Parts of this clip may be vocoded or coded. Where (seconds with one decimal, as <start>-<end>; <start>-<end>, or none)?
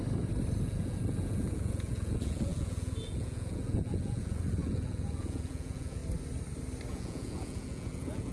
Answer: 0.6-6.0; 6.9-8.3